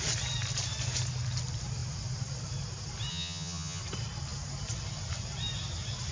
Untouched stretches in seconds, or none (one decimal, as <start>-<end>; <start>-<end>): 0.0-3.1; 3.8-6.1